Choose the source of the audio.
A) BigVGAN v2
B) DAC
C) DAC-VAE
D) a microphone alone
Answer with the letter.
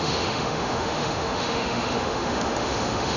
C